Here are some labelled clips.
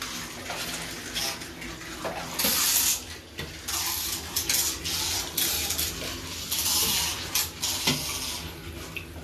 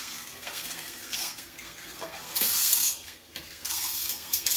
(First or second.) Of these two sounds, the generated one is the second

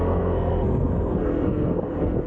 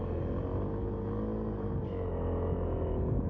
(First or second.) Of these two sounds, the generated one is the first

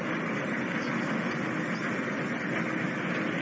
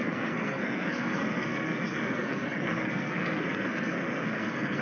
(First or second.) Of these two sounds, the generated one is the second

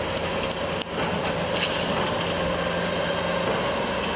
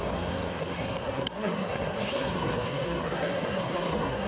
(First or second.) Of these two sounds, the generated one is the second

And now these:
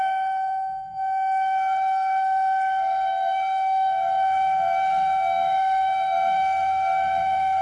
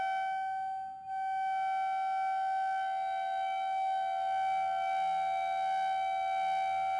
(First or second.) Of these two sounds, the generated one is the first